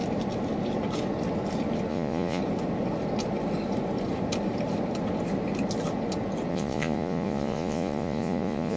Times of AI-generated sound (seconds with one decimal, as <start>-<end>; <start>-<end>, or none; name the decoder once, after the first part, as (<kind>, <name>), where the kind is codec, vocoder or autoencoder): 1.9-2.4 (vocoder, Vocos); 6.5-8.8